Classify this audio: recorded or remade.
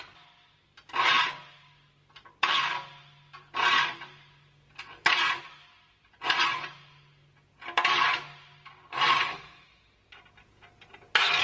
recorded